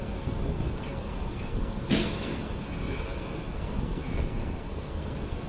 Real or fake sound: fake